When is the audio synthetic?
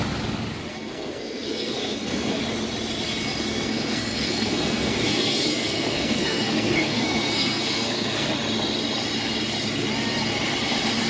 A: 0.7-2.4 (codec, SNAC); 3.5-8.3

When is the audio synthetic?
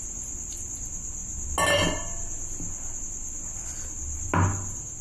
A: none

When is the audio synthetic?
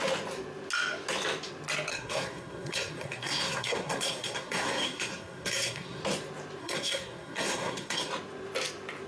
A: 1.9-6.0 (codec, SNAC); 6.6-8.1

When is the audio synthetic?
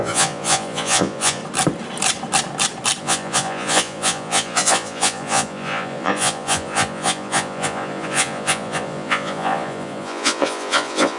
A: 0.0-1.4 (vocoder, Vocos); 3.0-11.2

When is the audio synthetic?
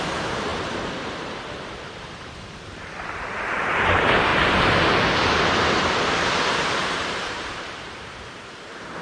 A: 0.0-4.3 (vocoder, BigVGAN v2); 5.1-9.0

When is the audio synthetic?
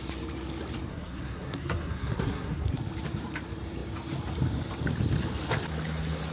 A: 0.9-2.8 (codec, SNAC)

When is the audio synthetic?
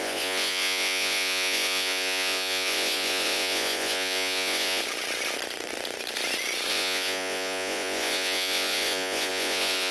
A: 0.0-4.8 (vocoder, Vocos); 6.7-9.9